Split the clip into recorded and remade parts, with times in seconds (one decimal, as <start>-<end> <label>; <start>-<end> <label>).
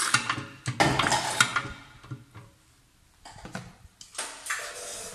0.0-5.1 recorded